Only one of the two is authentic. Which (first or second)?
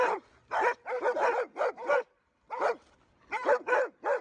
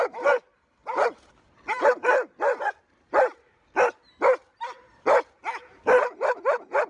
second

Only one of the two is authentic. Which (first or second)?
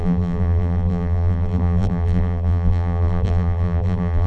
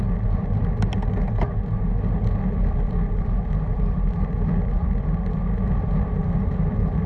second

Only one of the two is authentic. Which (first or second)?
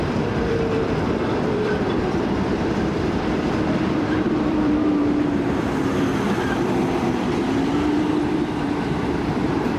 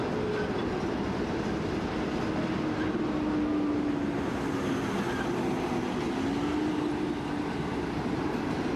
second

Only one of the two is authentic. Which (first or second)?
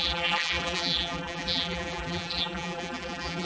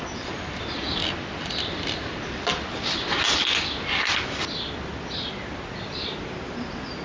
second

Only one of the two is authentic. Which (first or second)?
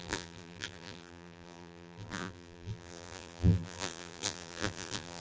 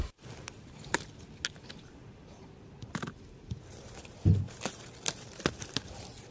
second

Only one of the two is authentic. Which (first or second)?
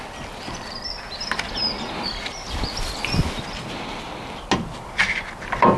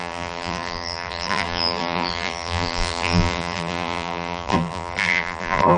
first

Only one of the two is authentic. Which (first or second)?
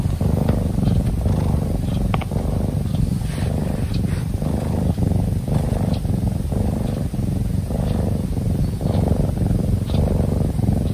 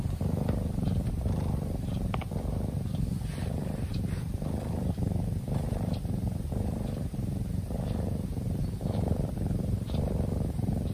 first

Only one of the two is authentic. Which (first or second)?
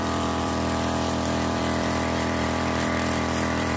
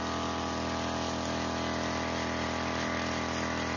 second